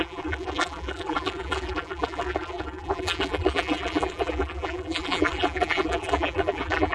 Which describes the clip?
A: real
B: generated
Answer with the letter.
B